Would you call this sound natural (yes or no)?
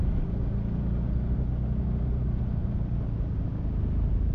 yes